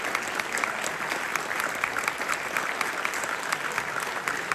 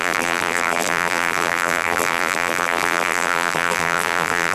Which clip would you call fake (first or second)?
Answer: second